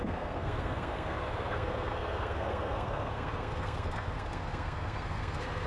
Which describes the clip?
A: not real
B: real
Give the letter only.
A